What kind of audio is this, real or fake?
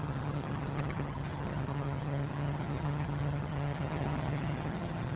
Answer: fake